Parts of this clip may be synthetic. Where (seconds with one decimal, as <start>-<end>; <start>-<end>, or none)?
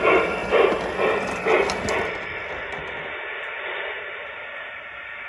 none